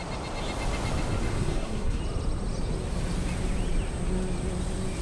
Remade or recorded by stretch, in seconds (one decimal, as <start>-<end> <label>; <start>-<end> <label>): 0.0-1.3 recorded; 1.3-2.0 remade; 2.0-5.0 recorded